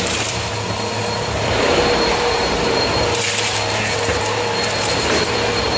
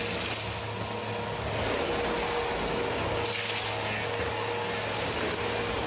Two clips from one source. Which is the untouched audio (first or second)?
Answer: second